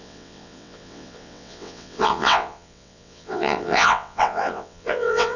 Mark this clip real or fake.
fake